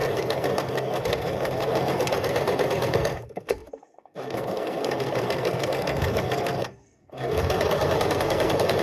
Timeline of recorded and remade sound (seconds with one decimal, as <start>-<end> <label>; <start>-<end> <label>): 0.0-8.8 remade